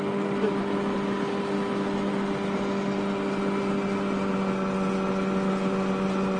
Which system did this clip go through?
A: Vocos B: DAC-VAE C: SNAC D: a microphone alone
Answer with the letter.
D